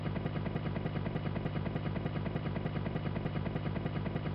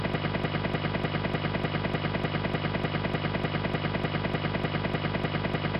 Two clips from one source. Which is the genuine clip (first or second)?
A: second